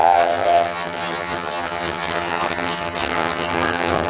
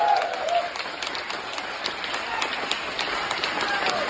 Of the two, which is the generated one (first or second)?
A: first